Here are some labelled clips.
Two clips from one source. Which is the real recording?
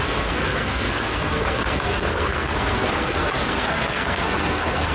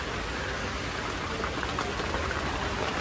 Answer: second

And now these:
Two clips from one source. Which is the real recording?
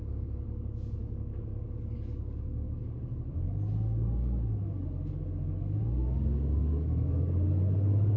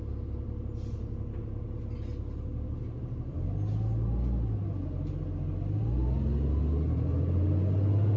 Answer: second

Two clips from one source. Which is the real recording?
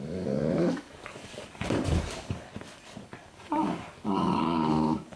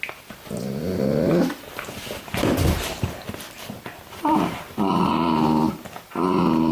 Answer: second